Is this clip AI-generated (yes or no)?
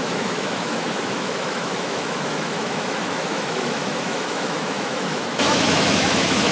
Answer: yes